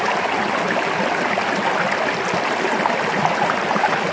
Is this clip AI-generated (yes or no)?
no